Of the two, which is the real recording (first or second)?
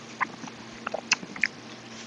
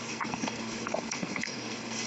first